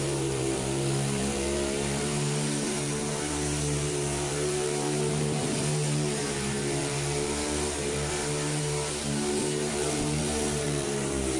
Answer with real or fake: fake